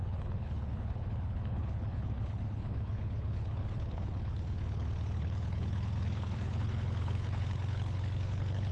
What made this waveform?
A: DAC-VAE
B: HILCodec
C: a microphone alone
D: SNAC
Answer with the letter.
B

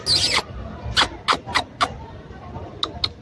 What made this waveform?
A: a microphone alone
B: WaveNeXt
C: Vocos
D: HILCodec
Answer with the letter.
A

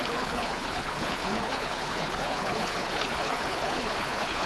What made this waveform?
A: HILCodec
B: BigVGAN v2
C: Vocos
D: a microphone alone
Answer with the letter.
A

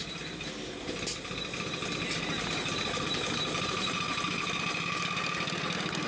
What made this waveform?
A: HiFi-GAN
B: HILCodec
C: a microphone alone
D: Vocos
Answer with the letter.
C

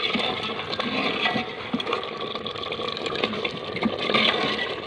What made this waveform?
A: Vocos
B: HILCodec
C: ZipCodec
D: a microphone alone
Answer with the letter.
D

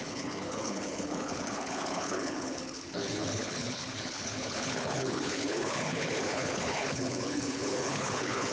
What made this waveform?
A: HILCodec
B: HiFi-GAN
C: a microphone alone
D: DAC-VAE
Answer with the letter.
A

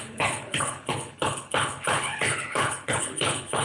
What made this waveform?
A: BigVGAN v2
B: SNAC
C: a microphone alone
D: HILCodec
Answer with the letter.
D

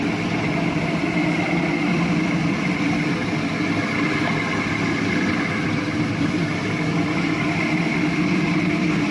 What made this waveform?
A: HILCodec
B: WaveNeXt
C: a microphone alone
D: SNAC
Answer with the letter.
C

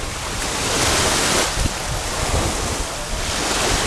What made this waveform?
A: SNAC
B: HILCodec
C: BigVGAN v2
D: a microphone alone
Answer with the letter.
D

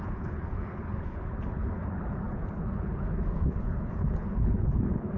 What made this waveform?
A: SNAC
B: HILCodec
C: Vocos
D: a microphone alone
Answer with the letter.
B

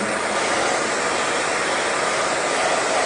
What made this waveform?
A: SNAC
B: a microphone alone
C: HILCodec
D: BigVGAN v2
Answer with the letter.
B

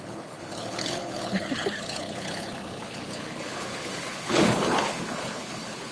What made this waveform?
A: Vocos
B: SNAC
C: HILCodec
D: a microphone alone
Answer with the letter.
C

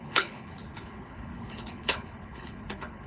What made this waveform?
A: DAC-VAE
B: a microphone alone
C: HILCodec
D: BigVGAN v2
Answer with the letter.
C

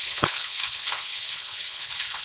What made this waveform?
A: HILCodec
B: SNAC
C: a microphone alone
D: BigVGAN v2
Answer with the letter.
A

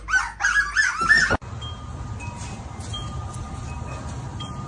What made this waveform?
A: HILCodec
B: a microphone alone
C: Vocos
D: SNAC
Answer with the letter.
B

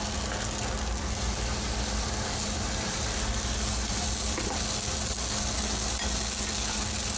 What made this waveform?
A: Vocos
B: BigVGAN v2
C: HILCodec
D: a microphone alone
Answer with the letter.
D